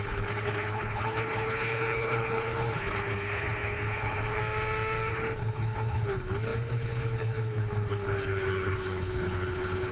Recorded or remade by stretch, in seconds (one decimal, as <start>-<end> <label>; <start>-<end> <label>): 0.0-4.4 remade; 4.4-5.1 recorded; 5.1-9.9 remade